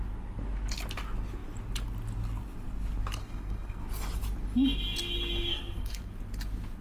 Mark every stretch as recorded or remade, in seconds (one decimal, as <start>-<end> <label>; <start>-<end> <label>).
0.0-3.2 recorded; 3.2-3.8 remade; 3.8-5.5 recorded; 5.5-6.1 remade; 6.1-6.8 recorded